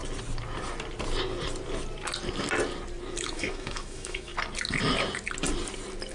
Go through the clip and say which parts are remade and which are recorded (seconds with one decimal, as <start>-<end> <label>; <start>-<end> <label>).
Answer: 0.0-3.2 recorded; 3.2-4.3 remade; 4.3-6.1 recorded